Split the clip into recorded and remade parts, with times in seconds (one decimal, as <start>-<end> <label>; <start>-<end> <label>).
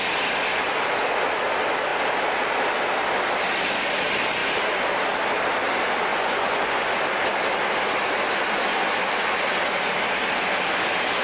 0.0-6.1 recorded; 6.1-6.9 remade; 6.9-11.2 recorded